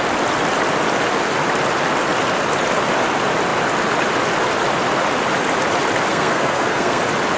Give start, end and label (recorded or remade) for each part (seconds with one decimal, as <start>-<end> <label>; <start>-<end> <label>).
0.0-6.1 recorded; 6.1-7.0 remade; 7.0-7.4 recorded